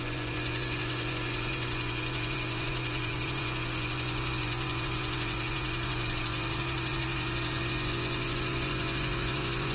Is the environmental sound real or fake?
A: fake